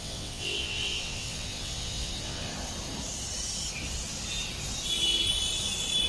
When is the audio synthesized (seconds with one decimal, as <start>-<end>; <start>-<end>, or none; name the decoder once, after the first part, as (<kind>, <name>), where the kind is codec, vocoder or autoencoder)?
0.0-2.5 (vocoder, WaveNeXt)